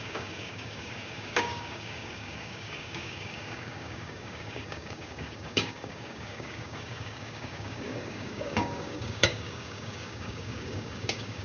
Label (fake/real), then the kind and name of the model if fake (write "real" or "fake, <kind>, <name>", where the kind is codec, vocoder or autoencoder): fake, codec, DAC